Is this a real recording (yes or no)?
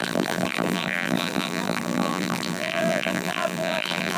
no